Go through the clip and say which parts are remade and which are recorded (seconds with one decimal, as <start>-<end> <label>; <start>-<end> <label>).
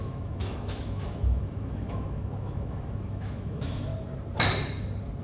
0.0-3.9 remade; 3.9-5.2 recorded